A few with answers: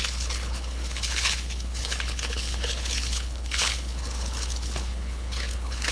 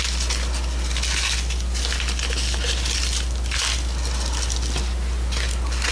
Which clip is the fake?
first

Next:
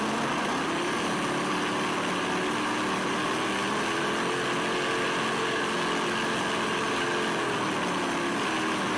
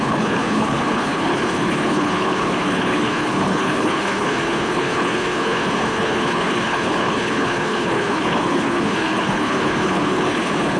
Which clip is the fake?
second